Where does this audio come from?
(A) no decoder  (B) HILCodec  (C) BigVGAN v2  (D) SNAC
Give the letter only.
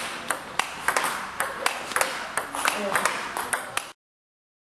A